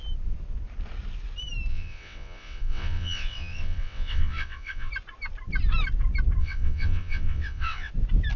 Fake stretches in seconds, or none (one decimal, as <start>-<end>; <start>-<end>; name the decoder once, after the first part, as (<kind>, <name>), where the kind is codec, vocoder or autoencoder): 1.7-4.9 (vocoder, WaveNeXt); 6.4-7.9